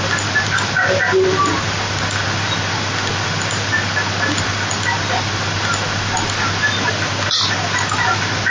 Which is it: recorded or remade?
recorded